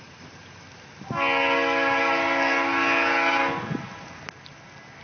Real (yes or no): yes